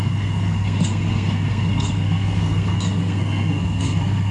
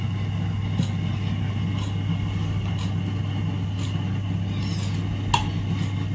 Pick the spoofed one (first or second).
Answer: first